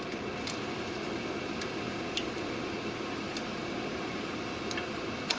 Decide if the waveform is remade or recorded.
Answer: recorded